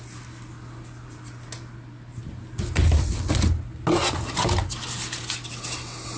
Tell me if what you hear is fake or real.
real